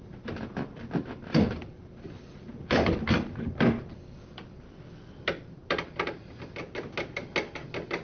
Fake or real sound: real